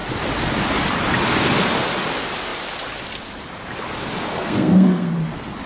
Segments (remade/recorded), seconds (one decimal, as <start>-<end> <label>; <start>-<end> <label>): 0.0-4.3 recorded; 4.3-5.1 remade; 5.1-5.7 recorded